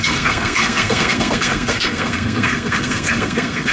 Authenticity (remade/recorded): remade